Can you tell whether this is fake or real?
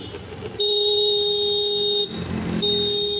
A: real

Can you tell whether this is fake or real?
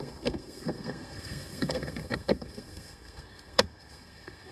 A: fake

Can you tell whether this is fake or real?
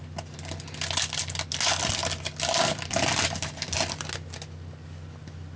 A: real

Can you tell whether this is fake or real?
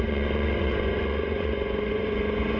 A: fake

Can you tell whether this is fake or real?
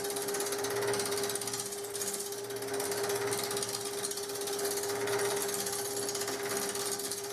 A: real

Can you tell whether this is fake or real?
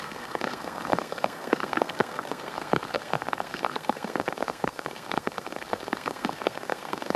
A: fake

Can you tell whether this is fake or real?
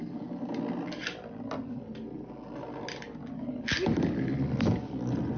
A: real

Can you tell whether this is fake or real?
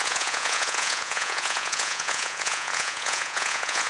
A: fake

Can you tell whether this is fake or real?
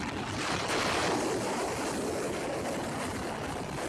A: real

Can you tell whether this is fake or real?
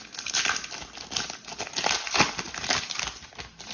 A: real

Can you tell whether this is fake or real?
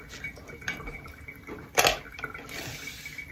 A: real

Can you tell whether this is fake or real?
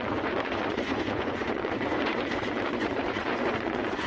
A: fake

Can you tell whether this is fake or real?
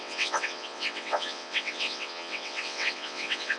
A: fake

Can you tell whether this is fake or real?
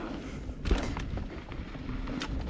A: real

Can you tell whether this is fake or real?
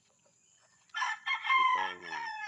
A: fake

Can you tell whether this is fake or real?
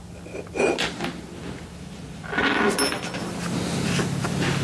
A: real